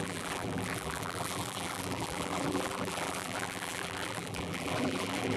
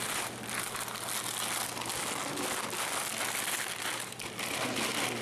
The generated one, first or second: first